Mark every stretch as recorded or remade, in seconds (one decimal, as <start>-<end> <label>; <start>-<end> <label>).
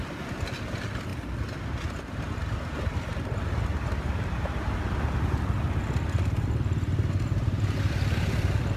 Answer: 0.0-8.8 recorded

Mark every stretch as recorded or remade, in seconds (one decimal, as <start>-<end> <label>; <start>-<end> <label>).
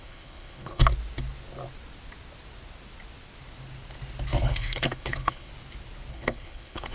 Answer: 0.0-0.8 remade; 0.8-4.4 recorded; 4.4-5.5 remade; 5.5-6.1 recorded; 6.1-6.9 remade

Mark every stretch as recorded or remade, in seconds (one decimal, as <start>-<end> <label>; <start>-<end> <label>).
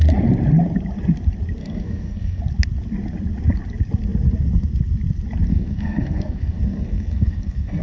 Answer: 0.0-1.6 recorded; 1.6-2.4 remade; 2.4-5.5 recorded; 5.5-7.8 remade